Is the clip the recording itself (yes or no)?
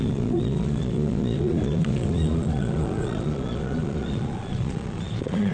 no